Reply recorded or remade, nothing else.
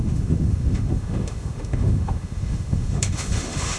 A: remade